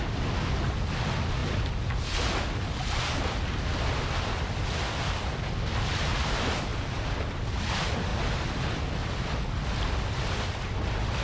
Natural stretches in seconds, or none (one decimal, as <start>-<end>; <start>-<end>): 0.0-11.2